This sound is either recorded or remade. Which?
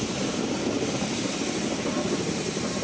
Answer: remade